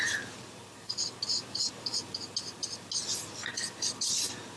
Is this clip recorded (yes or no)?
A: yes